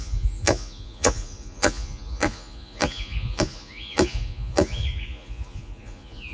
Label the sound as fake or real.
fake